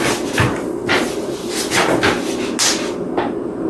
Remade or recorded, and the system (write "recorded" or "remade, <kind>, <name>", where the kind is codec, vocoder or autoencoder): recorded